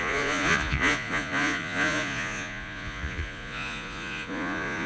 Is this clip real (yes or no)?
no